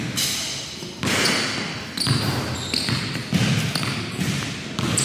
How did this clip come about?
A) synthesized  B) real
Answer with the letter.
B